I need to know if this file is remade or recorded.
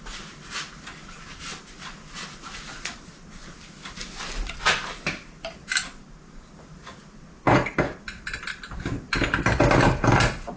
recorded